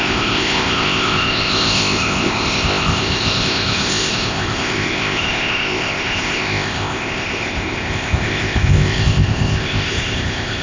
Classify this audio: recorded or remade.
remade